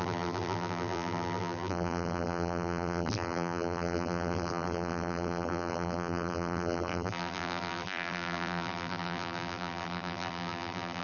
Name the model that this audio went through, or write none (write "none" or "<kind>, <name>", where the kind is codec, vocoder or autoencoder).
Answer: vocoder, BigVGAN v2